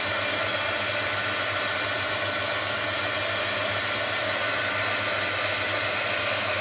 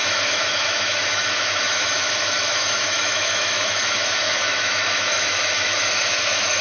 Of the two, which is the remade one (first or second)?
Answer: second